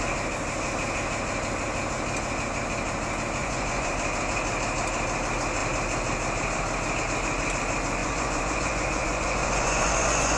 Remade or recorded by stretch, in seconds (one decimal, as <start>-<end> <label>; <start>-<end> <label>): 0.0-3.4 recorded; 3.4-3.9 remade; 3.9-8.0 recorded; 8.0-10.4 remade